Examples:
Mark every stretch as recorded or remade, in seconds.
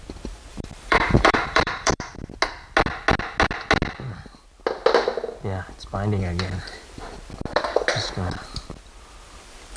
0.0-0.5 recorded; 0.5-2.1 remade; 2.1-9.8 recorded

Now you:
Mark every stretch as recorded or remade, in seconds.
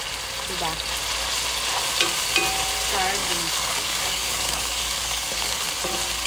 0.0-3.2 recorded; 3.2-5.6 remade; 5.6-6.3 recorded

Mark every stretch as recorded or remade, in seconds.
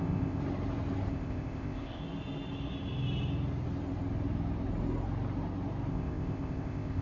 0.0-0.4 remade; 0.4-1.1 recorded; 1.1-2.0 remade; 2.0-5.9 recorded; 5.9-7.0 remade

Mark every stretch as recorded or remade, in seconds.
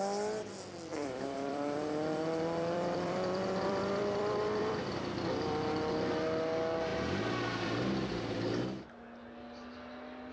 0.0-0.9 recorded; 0.9-4.9 remade; 4.9-10.3 recorded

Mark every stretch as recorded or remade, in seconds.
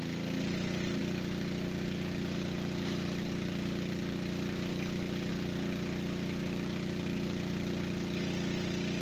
0.0-9.0 recorded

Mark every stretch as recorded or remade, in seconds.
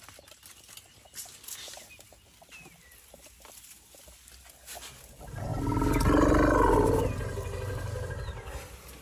0.0-9.0 recorded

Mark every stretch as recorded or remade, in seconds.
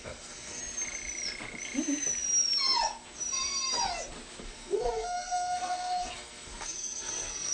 0.0-0.6 remade; 0.6-4.4 recorded; 4.4-7.5 remade